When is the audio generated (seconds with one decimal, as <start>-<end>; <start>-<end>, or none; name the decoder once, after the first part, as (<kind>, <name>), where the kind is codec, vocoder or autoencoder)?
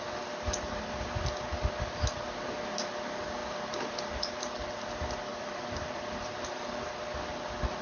3.4-4.7 (vocoder, BigVGAN v2); 5.3-7.0